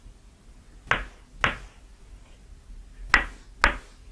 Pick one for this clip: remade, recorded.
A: recorded